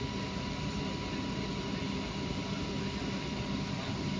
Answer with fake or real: real